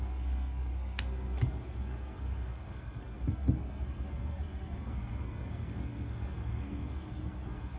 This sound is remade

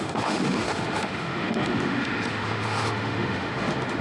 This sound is remade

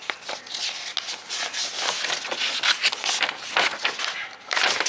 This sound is recorded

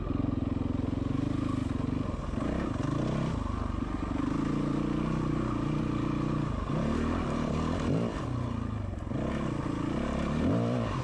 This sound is recorded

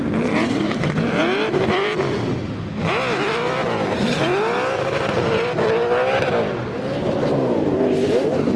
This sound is recorded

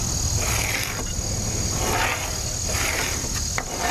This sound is recorded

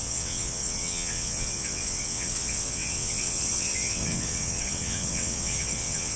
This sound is remade